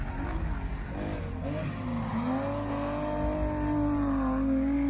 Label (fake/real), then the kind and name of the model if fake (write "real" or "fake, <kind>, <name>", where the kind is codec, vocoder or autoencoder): real